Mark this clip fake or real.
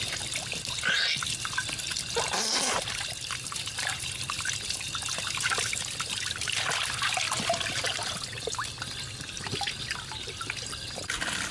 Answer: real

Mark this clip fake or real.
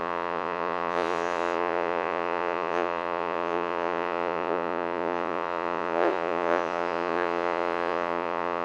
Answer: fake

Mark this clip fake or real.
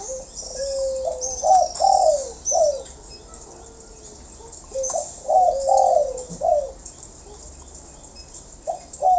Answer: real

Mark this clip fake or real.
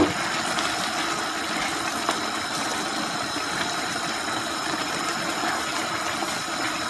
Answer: real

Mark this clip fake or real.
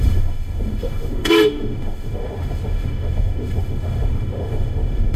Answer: fake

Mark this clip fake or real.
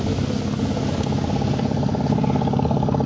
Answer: real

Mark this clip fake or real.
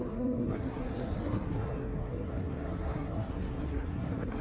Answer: fake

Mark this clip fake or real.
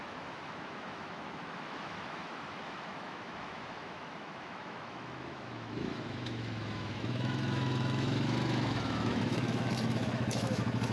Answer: fake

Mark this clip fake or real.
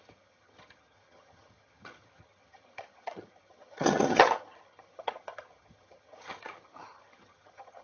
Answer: fake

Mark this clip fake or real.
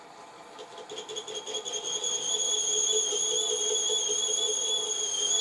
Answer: real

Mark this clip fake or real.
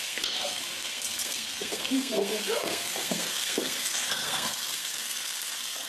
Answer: fake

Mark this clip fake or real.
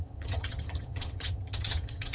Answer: fake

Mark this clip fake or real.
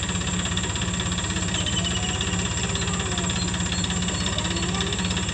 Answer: real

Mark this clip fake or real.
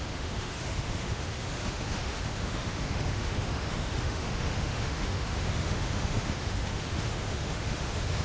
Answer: fake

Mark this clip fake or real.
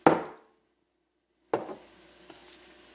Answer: real